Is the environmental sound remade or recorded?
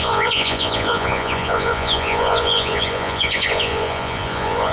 remade